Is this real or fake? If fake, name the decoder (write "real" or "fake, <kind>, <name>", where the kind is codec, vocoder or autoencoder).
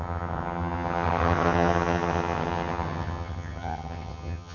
fake, vocoder, HiFi-GAN